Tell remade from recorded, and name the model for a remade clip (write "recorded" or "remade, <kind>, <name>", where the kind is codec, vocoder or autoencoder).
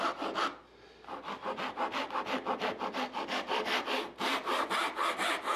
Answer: recorded